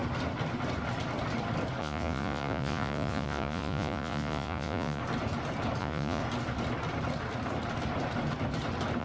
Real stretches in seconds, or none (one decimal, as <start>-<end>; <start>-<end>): 0.0-1.8; 5.0-5.8; 6.2-9.0